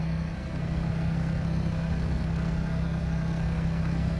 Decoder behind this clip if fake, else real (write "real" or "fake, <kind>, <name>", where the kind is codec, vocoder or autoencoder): fake, codec, SNAC